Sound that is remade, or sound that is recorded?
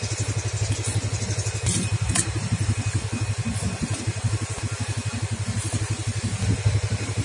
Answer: recorded